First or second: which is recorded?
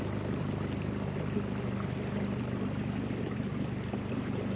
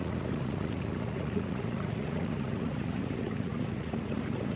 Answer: first